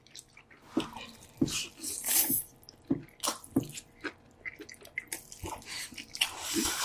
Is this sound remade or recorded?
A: recorded